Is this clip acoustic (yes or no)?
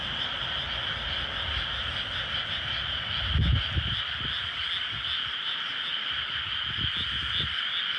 yes